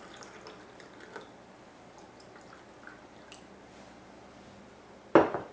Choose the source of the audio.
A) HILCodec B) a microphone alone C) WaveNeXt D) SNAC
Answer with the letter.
B